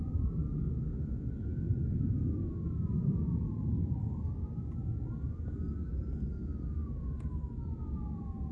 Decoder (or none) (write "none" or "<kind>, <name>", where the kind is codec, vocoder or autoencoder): none